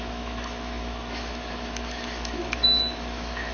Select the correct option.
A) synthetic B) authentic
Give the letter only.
A